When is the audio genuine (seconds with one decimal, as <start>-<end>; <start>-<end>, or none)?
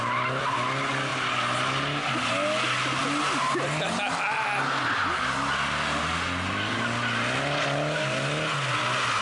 0.0-9.2